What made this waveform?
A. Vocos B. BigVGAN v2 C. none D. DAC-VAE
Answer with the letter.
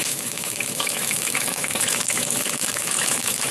D